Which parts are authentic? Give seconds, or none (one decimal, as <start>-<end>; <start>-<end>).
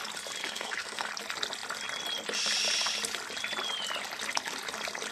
0.0-0.4; 1.1-5.1